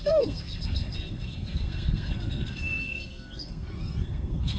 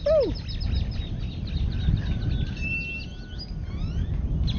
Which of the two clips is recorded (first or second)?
second